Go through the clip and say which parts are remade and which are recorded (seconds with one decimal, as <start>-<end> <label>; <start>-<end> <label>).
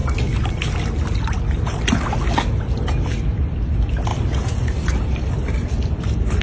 0.0-6.4 recorded